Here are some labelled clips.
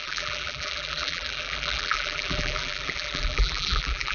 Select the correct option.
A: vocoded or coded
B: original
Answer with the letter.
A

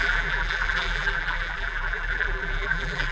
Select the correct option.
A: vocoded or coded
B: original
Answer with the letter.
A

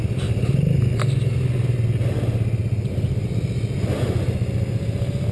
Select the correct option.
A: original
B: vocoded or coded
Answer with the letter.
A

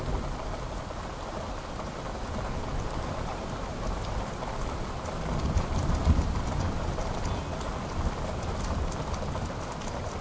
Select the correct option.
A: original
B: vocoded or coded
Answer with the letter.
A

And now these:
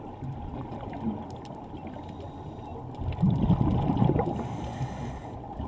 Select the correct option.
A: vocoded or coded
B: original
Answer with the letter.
B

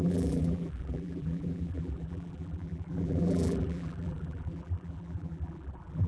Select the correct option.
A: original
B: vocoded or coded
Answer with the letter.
B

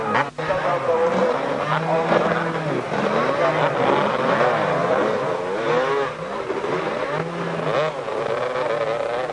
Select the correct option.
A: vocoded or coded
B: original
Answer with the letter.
B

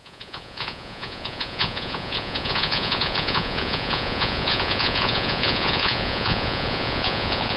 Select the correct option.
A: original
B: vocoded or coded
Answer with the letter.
B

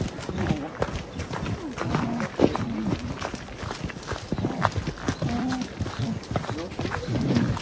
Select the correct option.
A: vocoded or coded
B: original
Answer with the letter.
B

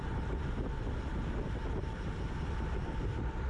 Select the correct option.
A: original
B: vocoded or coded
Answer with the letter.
A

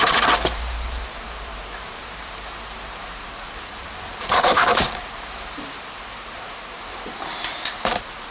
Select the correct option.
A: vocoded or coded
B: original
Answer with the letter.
A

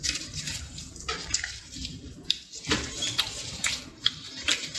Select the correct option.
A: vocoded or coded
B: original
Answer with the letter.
A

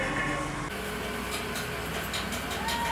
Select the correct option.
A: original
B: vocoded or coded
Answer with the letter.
A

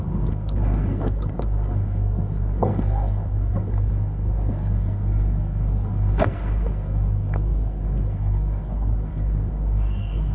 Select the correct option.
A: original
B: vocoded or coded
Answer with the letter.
B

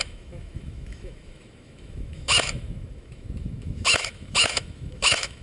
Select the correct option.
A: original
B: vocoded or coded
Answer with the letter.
B